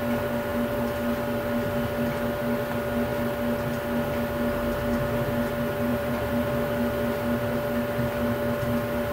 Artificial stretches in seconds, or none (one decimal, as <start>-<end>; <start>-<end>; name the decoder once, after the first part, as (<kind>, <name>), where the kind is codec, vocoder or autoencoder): 5.9-6.5 (vocoder, BigVGAN v2)